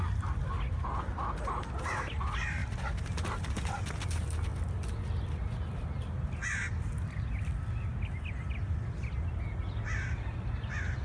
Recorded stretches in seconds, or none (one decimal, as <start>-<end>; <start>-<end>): 0.0-11.0

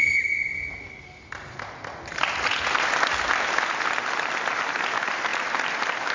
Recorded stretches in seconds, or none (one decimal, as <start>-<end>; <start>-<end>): 0.0-6.1

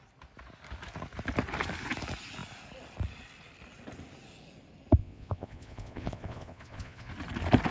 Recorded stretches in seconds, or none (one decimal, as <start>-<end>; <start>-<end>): 0.0-5.0; 7.1-7.7

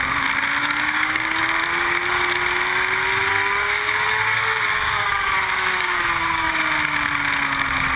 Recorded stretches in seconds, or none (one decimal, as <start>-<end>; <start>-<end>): 0.0-0.6; 1.4-3.3; 6.5-8.0

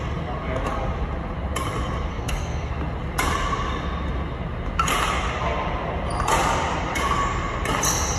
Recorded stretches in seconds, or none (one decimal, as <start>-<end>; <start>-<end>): 0.0-2.1; 2.7-8.2